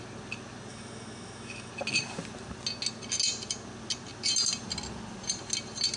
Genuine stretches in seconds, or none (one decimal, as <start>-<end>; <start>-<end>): 0.0-0.7; 1.7-6.0